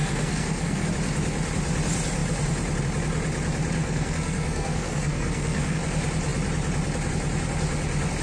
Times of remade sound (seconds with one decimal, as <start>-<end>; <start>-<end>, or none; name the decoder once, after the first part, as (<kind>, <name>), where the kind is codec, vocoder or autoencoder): 0.0-0.9 (codec, SNAC); 3.8-5.8